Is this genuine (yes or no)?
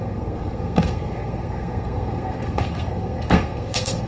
no